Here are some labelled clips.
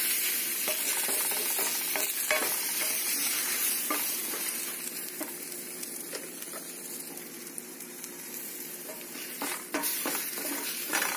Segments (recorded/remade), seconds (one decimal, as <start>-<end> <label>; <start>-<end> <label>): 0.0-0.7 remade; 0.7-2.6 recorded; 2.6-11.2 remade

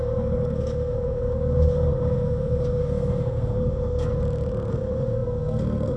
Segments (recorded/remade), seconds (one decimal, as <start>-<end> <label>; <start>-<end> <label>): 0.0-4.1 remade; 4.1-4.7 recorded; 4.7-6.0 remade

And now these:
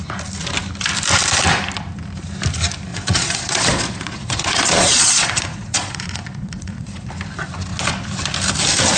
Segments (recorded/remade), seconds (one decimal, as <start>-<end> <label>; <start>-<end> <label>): 0.0-2.9 recorded; 2.9-7.1 remade; 7.1-9.0 recorded

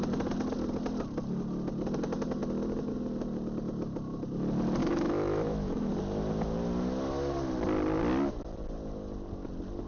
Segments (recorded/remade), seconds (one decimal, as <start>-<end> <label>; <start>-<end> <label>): 0.0-4.8 recorded; 4.8-5.9 remade; 5.9-9.9 recorded

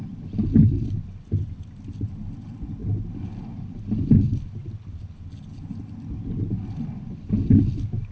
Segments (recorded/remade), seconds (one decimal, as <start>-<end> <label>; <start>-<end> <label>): 0.0-8.1 recorded

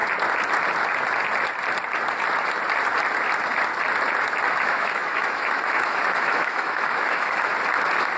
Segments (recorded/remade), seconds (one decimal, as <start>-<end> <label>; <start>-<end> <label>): 0.0-4.5 recorded; 4.5-7.5 remade; 7.5-8.2 recorded

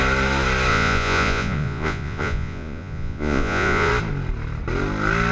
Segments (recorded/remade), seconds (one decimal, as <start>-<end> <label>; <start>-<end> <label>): 0.0-0.7 recorded; 0.7-3.9 remade; 3.9-5.3 recorded

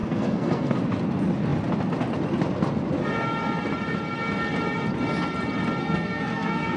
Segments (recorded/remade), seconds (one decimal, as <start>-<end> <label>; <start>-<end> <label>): 0.0-0.8 remade; 0.8-5.8 recorded; 5.8-6.8 remade